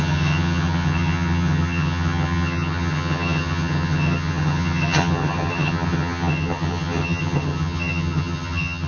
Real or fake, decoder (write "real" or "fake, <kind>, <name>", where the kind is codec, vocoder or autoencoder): fake, vocoder, HiFi-GAN